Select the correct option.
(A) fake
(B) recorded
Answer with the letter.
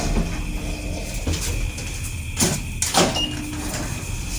B